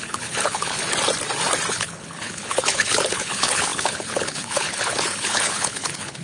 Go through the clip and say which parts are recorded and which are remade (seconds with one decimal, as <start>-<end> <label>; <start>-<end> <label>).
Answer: 0.0-0.8 remade; 0.8-1.7 recorded; 1.7-6.2 remade